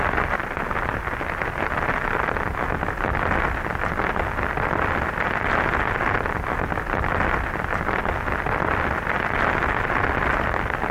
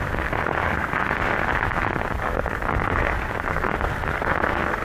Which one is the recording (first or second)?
first